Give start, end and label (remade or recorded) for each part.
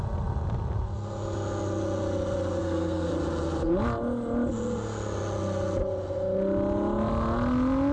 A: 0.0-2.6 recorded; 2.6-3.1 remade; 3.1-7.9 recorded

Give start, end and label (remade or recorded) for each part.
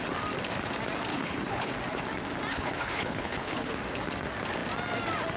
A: 0.0-1.1 recorded; 1.1-1.7 remade; 1.7-2.5 recorded; 2.5-3.7 remade; 3.7-5.4 recorded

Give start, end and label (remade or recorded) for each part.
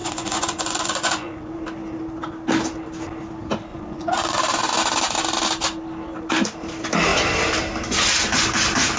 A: 0.0-1.6 remade; 1.6-3.7 recorded; 3.7-4.4 remade; 4.4-9.0 recorded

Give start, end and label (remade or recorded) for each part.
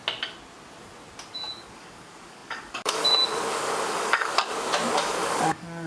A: 0.0-1.3 recorded; 1.3-4.3 remade; 4.3-4.9 recorded; 4.9-5.9 remade